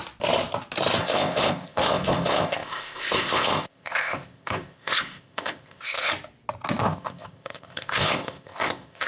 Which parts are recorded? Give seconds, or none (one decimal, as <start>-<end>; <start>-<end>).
0.0-1.0; 6.1-6.8